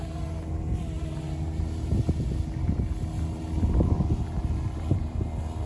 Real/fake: real